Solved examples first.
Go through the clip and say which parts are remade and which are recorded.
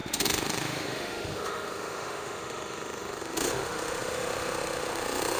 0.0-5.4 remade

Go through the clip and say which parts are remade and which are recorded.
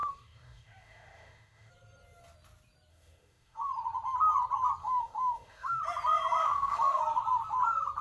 0.0-1.7 remade; 1.7-2.9 recorded; 2.9-3.7 remade; 3.7-4.8 recorded; 4.8-5.8 remade; 5.8-6.4 recorded; 6.4-7.0 remade; 7.0-8.0 recorded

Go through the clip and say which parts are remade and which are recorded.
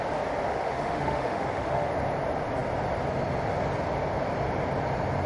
0.0-0.5 recorded; 0.5-1.9 remade; 1.9-5.3 recorded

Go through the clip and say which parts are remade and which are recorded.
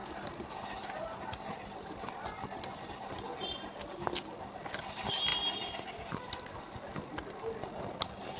0.0-8.4 recorded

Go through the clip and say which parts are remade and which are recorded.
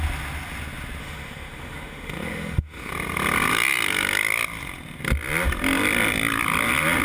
0.0-1.0 recorded; 1.0-2.9 remade; 2.9-7.0 recorded